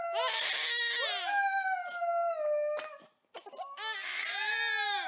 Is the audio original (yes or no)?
yes